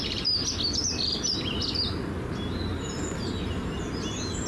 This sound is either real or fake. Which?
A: real